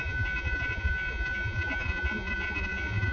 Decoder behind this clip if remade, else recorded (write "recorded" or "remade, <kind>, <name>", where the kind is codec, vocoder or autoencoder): remade, vocoder, Vocos